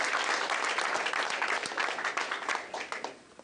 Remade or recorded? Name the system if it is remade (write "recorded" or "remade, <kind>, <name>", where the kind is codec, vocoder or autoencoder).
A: recorded